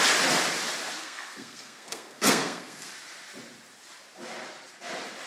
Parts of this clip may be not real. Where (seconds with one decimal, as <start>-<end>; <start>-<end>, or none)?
1.0-2.9